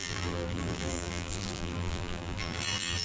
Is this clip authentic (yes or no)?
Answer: no